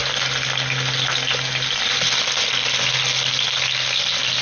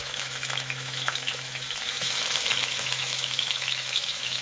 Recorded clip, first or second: first